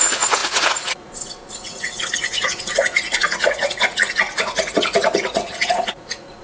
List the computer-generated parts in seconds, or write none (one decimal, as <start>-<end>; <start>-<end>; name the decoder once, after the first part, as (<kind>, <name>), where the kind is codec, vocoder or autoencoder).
0.0-6.4 (vocoder, Vocos)